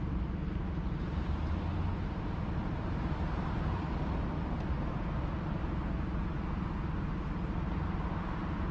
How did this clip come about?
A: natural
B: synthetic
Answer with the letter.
A